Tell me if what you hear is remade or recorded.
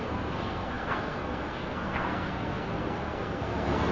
remade